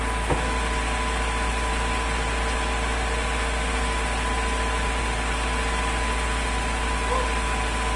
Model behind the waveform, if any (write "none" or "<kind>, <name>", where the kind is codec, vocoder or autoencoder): none